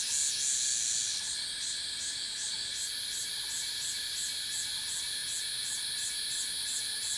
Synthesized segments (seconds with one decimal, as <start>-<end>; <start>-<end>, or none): none

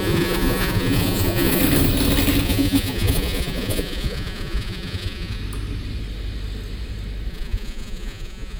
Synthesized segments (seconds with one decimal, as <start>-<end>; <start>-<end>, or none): 0.0-1.6; 2.4-5.4; 7.3-8.6